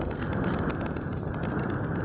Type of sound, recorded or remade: recorded